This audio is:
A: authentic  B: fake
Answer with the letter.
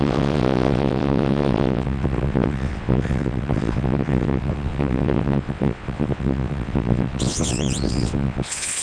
B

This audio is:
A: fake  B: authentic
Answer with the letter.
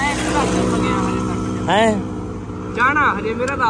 B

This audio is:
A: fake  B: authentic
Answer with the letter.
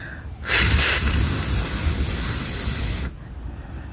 B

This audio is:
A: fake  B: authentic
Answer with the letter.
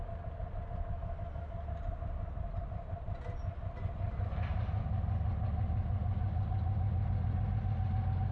B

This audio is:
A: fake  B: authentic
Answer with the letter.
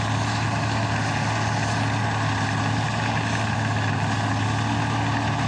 B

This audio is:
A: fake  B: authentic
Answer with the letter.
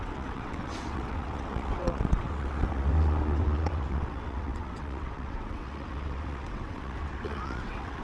A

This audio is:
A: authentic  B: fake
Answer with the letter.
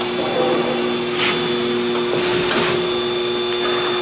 A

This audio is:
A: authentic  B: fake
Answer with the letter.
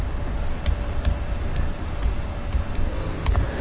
A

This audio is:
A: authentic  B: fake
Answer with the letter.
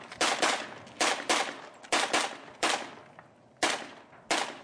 A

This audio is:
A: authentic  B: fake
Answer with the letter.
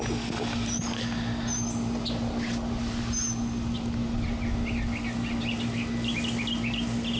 A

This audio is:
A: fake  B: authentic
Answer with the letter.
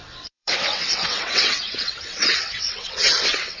A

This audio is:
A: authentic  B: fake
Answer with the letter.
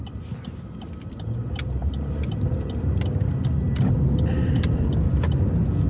A